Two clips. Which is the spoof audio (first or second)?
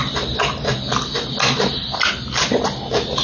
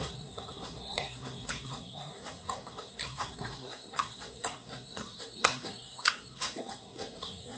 second